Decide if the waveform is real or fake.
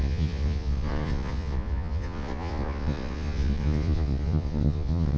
fake